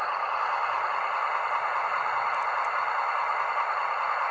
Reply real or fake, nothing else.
real